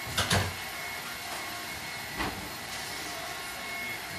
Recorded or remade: recorded